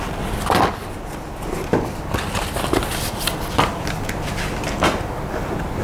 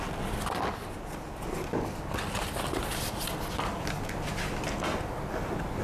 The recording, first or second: second